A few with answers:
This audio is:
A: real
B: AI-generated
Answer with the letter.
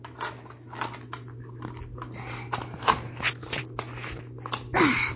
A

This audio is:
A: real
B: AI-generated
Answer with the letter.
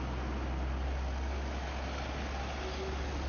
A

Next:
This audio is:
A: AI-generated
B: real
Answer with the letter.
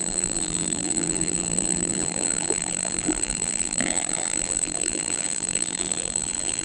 A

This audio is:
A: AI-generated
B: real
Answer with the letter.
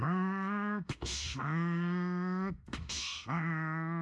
A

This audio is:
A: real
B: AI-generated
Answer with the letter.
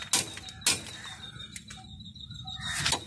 A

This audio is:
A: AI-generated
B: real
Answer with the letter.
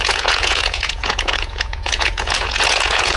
A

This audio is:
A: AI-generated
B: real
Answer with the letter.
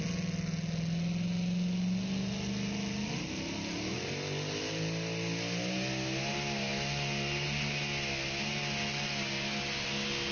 B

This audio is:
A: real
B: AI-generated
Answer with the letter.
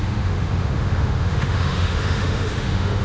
B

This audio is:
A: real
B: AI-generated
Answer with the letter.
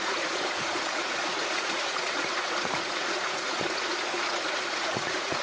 B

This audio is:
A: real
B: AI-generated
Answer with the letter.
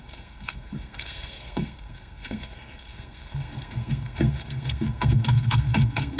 B